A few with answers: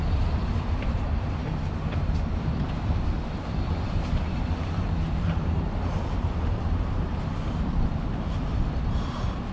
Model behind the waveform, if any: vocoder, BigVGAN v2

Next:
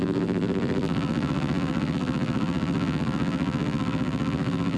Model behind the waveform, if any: vocoder, BigVGAN v2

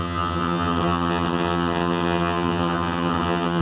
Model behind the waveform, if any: vocoder, HiFi-GAN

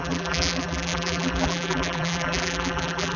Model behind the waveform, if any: vocoder, BigVGAN v2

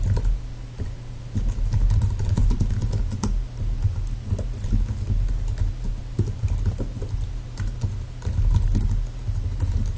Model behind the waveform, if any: none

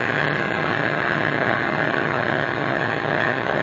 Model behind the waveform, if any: vocoder, HiFi-GAN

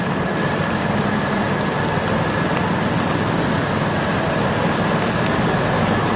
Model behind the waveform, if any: none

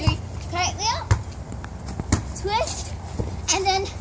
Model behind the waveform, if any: none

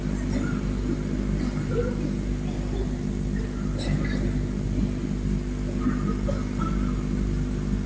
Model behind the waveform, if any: none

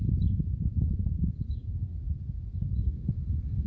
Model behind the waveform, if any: vocoder, BigVGAN v2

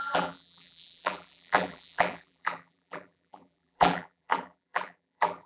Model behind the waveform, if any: vocoder, BigVGAN v2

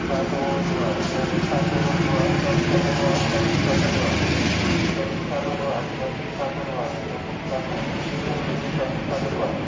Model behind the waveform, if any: none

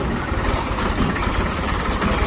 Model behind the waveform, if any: vocoder, BigVGAN v2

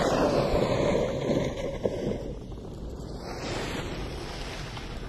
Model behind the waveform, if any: none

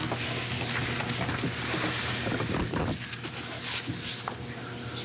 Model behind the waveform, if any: none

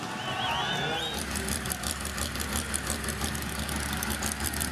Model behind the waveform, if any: none